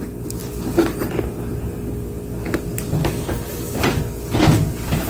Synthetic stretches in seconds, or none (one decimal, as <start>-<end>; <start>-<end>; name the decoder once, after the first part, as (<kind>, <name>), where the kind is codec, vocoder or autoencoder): 3.0-3.8 (codec, DAC)